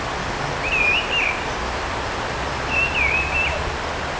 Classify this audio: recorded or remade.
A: recorded